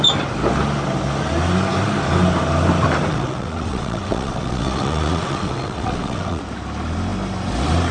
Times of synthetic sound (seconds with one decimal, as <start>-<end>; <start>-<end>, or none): 3.1-6.4